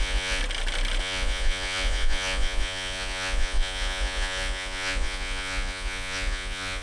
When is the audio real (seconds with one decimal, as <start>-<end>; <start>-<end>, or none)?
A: 0.4-1.0